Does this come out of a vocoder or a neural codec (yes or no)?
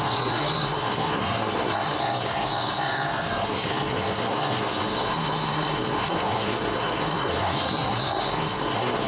yes